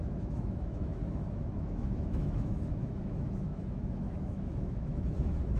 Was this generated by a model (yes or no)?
yes